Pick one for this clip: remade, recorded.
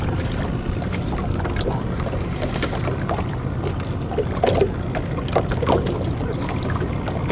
recorded